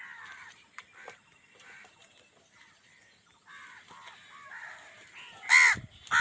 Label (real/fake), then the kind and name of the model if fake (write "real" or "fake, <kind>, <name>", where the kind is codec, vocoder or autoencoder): real